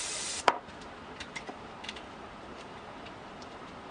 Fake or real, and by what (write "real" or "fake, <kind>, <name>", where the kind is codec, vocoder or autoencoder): fake, vocoder, BigVGAN v2